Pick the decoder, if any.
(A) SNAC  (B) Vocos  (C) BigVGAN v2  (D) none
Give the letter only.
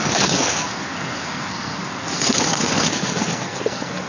A